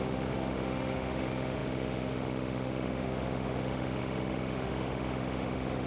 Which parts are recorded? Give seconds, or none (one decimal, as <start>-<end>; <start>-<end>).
none